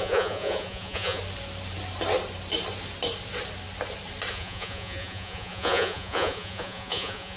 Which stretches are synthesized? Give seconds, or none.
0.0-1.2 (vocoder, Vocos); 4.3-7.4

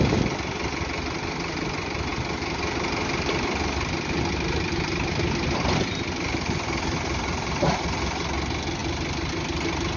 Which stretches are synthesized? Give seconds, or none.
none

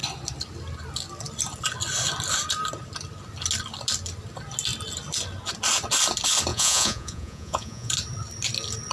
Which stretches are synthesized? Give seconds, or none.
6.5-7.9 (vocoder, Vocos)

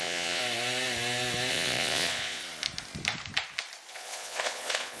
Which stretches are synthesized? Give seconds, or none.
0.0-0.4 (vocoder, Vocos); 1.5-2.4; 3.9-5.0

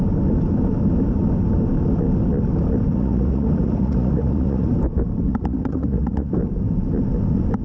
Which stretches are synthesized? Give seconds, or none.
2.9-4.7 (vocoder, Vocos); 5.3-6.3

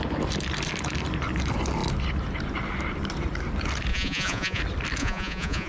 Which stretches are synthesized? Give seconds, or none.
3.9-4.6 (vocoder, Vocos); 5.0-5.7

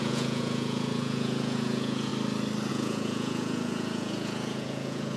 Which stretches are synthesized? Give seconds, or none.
0.0-2.1 (vocoder, Vocos); 2.7-5.2